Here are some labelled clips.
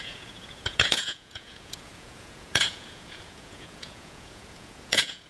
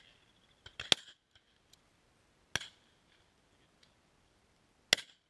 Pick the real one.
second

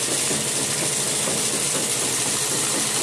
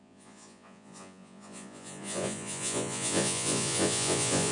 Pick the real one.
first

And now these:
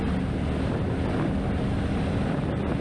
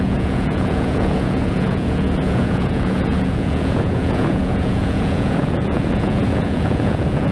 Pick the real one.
first